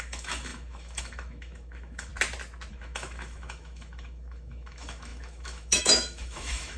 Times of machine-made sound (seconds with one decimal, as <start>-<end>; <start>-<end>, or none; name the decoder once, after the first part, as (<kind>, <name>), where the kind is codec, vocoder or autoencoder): 0.0-2.1 (autoencoder, DAC-VAE); 2.7-6.8